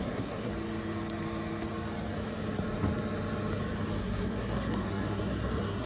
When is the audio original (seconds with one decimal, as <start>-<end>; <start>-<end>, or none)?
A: 0.5-4.0